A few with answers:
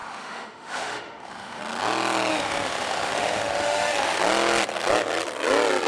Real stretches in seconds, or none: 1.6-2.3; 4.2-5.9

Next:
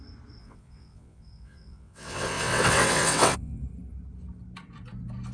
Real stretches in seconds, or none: 0.0-0.4; 3.6-5.3